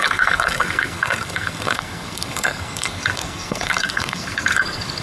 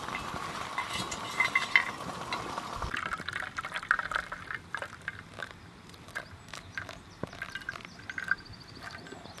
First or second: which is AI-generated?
first